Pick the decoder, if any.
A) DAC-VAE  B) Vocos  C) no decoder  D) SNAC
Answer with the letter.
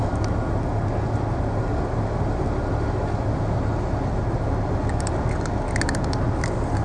C